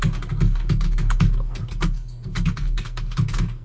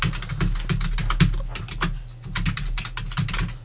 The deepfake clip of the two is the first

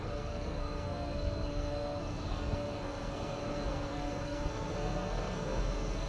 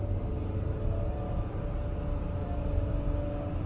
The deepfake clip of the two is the first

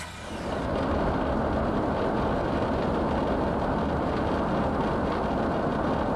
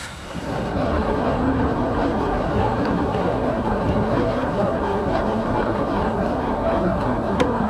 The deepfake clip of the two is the second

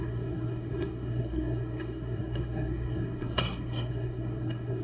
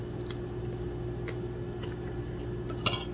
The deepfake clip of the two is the first